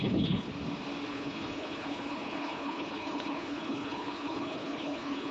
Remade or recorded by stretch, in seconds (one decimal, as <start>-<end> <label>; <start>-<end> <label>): 0.0-0.5 remade; 0.5-1.1 recorded; 1.1-5.3 remade

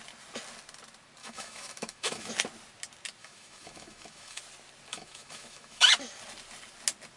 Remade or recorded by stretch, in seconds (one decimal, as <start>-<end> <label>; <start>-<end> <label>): 0.0-1.2 recorded; 1.2-2.3 remade; 2.3-3.2 recorded; 3.2-4.4 remade; 4.4-4.9 recorded; 4.9-5.9 remade; 5.9-7.2 recorded